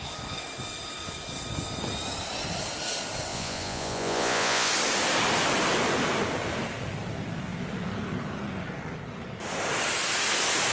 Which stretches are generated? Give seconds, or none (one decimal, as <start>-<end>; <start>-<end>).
3.3-4.7